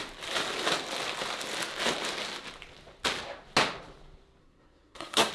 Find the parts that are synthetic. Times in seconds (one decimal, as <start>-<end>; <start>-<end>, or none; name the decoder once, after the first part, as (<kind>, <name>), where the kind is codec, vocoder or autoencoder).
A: 4.4-5.3 (codec, SNAC)